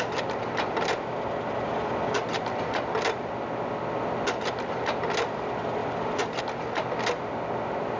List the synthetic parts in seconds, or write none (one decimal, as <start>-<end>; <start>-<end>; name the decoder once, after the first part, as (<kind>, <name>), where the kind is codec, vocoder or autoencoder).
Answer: none